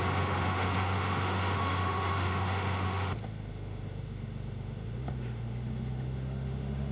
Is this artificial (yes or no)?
yes